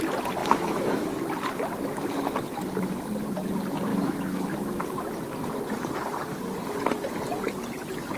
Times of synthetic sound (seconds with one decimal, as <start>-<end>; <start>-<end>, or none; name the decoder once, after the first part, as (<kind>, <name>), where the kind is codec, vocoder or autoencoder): 0.4-1.1 (autoencoder, DAC-VAE); 3.9-4.8